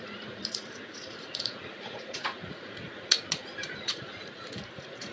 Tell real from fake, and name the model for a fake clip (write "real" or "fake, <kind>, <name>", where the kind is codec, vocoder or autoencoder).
fake, vocoder, Vocos